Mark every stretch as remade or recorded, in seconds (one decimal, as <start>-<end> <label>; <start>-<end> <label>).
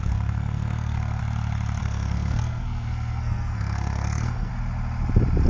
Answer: 0.0-1.2 remade; 1.2-1.8 recorded; 1.8-4.5 remade; 4.5-5.5 recorded